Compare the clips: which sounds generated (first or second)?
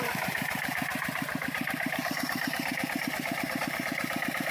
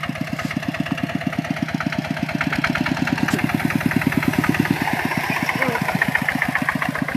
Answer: first